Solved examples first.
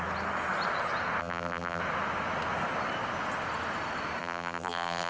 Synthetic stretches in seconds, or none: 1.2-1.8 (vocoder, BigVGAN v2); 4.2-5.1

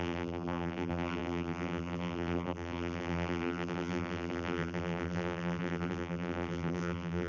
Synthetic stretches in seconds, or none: 0.0-7.3 (vocoder, BigVGAN v2)

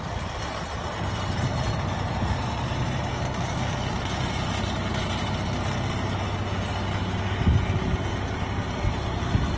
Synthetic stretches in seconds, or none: 0.7-3.1 (vocoder, BigVGAN v2)

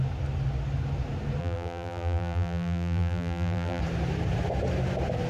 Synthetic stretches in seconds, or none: 1.4-3.8 (vocoder, BigVGAN v2)

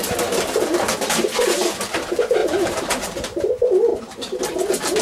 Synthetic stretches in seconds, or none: 2.4-3.5 (vocoder, BigVGAN v2); 3.9-4.4

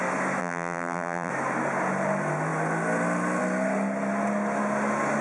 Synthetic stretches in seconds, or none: 0.4-1.3 (vocoder, BigVGAN v2)